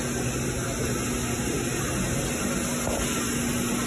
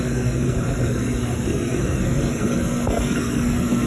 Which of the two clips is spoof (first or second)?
second